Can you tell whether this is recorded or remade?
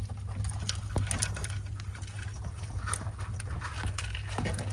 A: recorded